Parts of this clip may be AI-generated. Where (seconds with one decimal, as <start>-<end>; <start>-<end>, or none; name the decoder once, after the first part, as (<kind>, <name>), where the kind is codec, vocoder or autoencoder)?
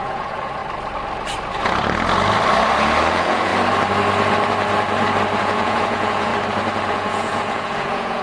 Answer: 0.0-0.6 (vocoder, Vocos); 3.1-3.5; 5.4-6.3; 6.9-8.2